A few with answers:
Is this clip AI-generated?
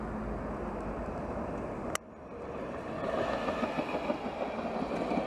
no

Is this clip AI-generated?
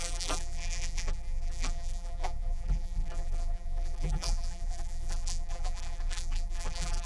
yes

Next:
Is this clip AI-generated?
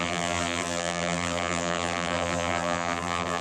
yes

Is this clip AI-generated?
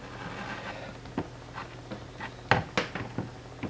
no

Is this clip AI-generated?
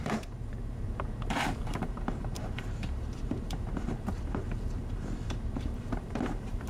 yes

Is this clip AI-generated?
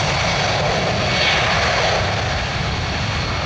no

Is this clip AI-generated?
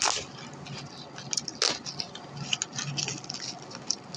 no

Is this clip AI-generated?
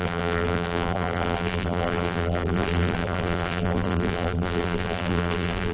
yes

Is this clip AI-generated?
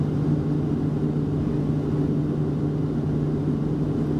no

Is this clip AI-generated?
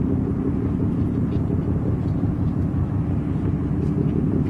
yes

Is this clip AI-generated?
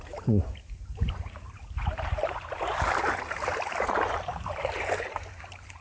yes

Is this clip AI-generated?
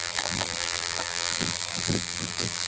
yes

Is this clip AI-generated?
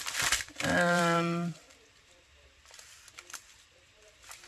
yes